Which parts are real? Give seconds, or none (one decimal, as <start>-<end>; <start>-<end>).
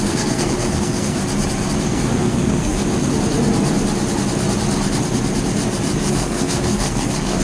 1.2-1.8; 2.8-6.1